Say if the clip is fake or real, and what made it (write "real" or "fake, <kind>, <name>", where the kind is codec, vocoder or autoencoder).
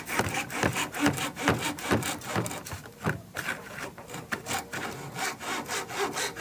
real